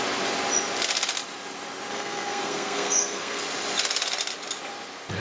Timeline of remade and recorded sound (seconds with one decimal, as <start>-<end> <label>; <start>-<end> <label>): 0.0-1.9 recorded; 1.9-3.4 remade; 3.4-5.2 recorded